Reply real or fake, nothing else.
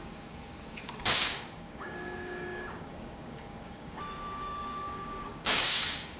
fake